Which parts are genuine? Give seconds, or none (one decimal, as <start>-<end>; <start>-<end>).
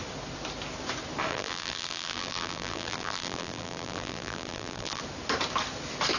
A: 0.0-1.3; 5.0-6.2